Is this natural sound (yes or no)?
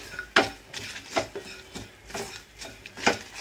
yes